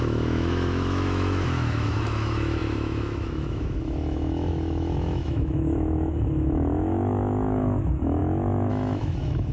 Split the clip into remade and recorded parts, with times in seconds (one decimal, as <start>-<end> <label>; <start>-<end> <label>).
0.0-9.5 remade